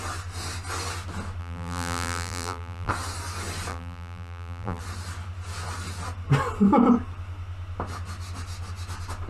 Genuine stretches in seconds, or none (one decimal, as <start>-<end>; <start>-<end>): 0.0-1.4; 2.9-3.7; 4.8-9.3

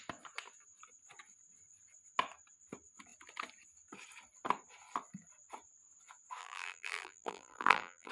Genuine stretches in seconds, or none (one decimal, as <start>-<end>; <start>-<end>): 0.0-6.4

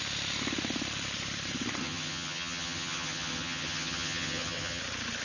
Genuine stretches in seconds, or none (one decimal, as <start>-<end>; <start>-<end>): 0.0-1.8; 4.8-5.2

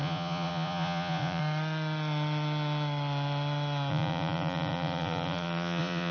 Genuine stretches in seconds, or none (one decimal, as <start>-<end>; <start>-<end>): 1.4-3.9

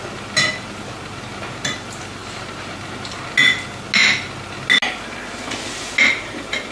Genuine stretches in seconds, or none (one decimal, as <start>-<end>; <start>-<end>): 0.0-6.7

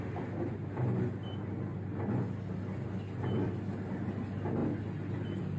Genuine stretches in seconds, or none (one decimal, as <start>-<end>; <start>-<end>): 0.0-5.6

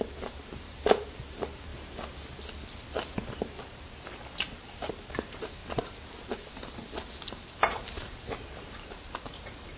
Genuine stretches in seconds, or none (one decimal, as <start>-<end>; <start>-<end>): 1.7-3.6; 5.6-7.3

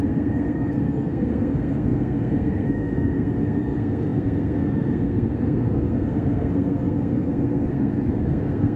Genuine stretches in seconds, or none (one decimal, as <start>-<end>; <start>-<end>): none